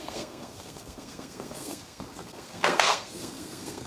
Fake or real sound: fake